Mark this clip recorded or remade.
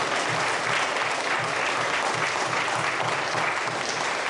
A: recorded